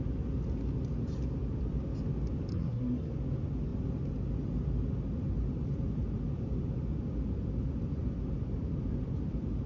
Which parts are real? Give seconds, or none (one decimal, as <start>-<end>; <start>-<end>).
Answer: 0.0-2.5; 3.1-9.7